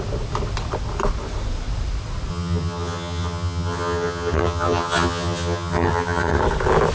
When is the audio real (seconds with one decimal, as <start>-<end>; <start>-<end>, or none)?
0.0-2.3; 6.4-6.9